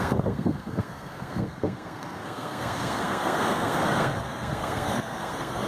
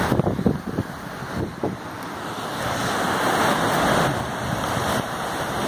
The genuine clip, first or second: second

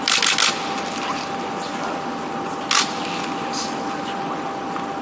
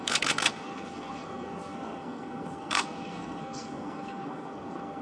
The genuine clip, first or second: first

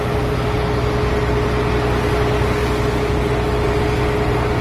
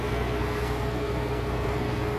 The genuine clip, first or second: first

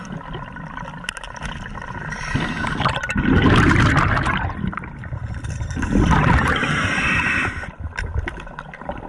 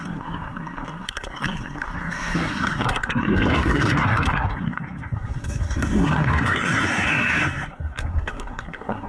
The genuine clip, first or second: first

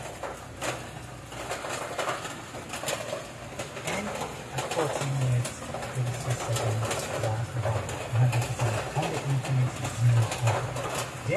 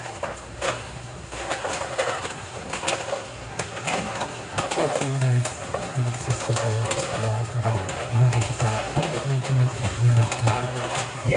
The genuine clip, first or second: first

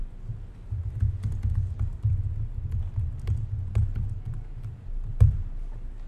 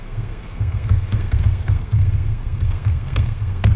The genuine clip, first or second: first